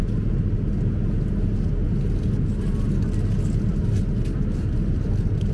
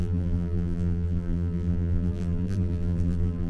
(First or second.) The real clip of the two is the first